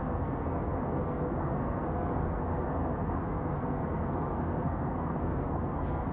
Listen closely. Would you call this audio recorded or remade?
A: remade